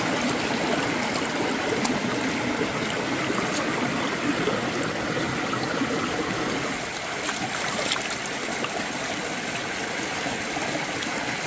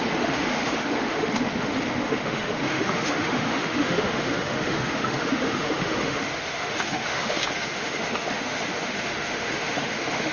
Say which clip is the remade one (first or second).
second